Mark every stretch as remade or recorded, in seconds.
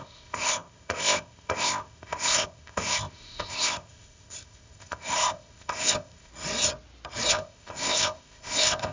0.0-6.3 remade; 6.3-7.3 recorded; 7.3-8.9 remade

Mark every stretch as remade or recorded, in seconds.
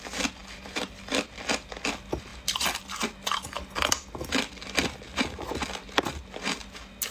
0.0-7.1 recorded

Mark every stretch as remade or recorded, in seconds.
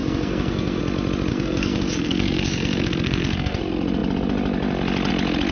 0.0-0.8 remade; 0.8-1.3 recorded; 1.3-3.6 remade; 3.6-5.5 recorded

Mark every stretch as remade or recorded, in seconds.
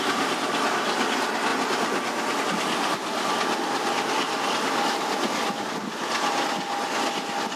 0.0-7.6 recorded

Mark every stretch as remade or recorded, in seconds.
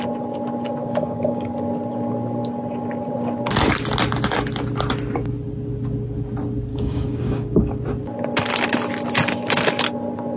0.0-0.8 recorded; 0.8-1.5 remade; 1.5-6.7 recorded; 6.7-7.7 remade; 7.7-10.4 recorded